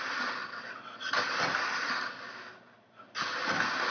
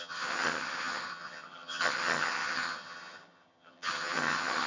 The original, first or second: first